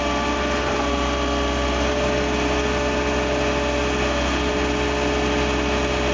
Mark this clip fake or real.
real